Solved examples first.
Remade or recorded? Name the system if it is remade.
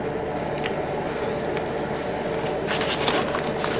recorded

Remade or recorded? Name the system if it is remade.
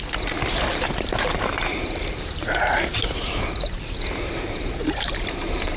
remade, vocoder, BigVGAN v2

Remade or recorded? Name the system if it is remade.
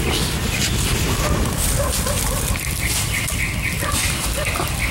recorded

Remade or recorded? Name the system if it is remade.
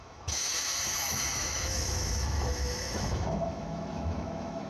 remade, autoencoder, DAC-VAE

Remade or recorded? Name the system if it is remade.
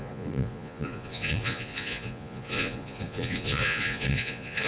remade, vocoder, Vocos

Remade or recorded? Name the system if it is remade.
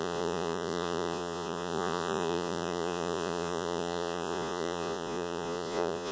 remade, vocoder, Vocos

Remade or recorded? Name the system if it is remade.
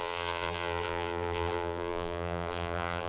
remade, vocoder, BigVGAN v2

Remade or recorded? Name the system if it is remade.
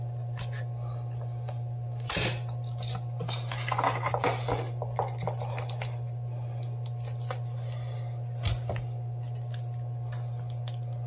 remade, vocoder, BigVGAN v2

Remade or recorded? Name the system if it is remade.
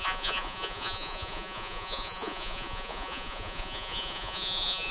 remade, vocoder, Vocos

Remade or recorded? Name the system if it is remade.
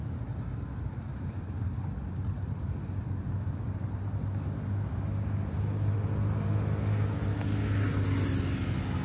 recorded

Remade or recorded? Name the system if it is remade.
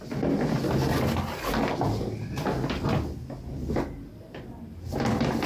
recorded